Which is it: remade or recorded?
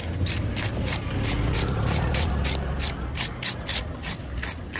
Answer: recorded